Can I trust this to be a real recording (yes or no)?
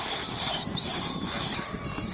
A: no